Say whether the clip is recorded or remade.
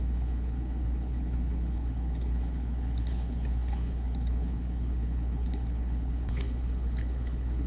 remade